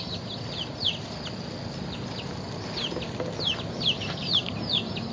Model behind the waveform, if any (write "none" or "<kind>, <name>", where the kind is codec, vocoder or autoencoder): none